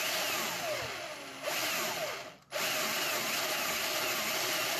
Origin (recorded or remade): recorded